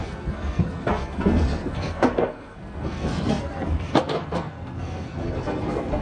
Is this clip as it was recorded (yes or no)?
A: no